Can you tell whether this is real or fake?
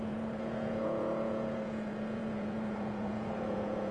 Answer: fake